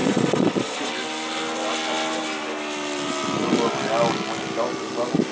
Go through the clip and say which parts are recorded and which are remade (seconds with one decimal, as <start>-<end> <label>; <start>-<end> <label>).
0.0-0.9 remade; 0.9-5.3 recorded